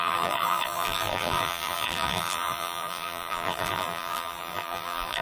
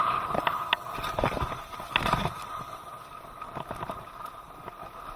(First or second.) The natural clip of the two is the second